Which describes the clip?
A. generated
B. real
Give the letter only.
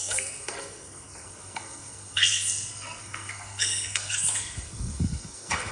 A